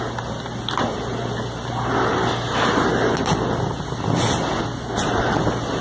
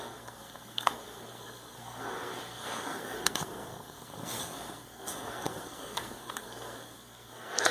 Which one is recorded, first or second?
first